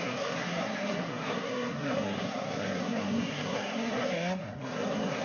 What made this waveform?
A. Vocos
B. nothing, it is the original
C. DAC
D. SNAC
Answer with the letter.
D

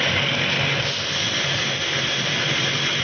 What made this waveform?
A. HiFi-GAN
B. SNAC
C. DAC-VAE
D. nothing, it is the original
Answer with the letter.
D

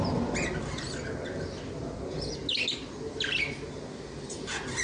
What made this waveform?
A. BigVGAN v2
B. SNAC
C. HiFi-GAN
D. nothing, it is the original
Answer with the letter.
D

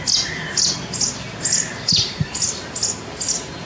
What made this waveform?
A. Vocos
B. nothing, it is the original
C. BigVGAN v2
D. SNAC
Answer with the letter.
B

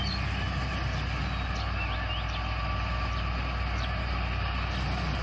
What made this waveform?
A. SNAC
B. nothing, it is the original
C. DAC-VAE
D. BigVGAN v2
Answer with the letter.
B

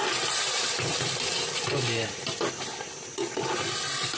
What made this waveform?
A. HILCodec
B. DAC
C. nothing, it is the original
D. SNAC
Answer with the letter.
C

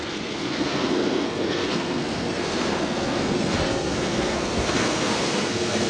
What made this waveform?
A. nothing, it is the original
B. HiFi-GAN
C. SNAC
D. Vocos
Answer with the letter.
C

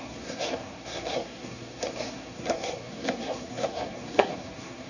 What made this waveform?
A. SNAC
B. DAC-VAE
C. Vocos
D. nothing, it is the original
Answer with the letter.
A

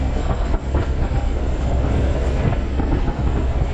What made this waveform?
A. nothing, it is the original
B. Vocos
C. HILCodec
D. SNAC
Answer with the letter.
D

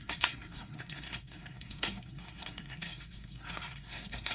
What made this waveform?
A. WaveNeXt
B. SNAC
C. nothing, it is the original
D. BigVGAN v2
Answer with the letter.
B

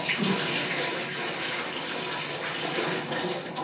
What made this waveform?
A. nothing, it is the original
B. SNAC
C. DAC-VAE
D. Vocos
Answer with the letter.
A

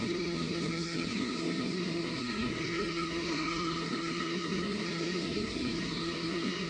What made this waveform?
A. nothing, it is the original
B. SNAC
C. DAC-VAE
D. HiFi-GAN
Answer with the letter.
B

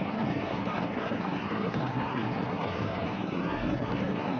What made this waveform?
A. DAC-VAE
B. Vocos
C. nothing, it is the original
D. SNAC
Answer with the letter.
D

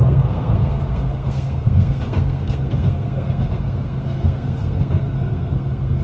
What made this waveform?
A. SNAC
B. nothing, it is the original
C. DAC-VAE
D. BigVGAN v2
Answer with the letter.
A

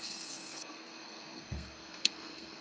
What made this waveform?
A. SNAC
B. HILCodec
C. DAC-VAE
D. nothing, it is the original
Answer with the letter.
A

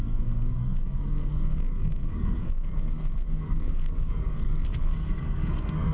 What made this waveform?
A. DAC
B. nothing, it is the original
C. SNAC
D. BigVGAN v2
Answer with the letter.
C